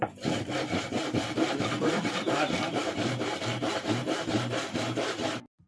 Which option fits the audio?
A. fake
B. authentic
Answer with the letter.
A